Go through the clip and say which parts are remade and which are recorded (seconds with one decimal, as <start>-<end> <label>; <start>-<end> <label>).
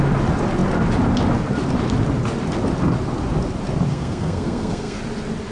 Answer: 0.0-3.9 recorded; 3.9-5.0 remade; 5.0-5.5 recorded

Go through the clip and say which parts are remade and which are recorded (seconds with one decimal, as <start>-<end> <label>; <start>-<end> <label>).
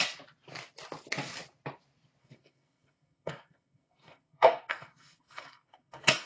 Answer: 0.0-2.2 recorded; 2.2-6.3 remade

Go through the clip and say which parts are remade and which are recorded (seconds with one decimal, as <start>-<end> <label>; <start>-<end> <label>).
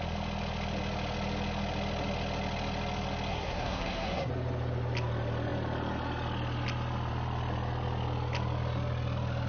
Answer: 0.0-3.3 recorded; 3.3-4.3 remade; 4.3-9.5 recorded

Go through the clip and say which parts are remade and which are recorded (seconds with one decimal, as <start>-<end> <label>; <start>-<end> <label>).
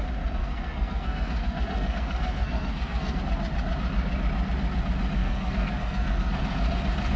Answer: 0.0-0.4 recorded; 0.4-3.2 remade; 3.2-5.2 recorded; 5.2-6.4 remade; 6.4-7.2 recorded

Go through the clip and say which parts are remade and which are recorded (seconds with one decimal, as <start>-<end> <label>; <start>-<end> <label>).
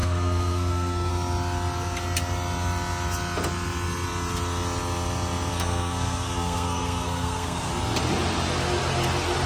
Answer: 0.0-1.1 remade; 1.1-5.5 recorded; 5.5-7.7 remade; 7.7-9.5 recorded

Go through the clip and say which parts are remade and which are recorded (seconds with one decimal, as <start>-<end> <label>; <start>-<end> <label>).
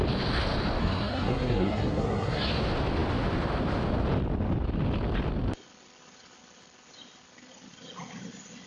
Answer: 0.0-0.8 recorded; 0.8-2.5 remade; 2.5-8.7 recorded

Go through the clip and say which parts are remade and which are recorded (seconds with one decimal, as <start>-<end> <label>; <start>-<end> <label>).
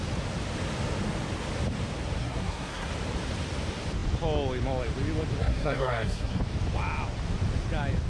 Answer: 0.0-2.2 recorded; 2.2-2.9 remade; 2.9-5.4 recorded; 5.4-6.4 remade; 6.4-8.1 recorded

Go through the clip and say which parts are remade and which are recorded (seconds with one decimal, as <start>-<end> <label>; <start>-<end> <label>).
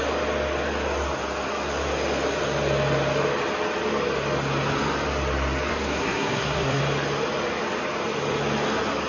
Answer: 0.0-5.7 recorded; 5.7-6.8 remade; 6.8-9.1 recorded